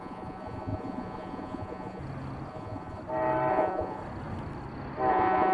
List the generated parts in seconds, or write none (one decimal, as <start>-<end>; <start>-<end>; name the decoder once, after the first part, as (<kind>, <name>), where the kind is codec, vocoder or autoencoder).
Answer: 0.0-2.0 (vocoder, Vocos); 2.5-3.0; 3.5-4.0; 5.1-5.5